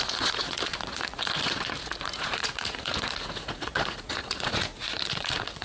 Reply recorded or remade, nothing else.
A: remade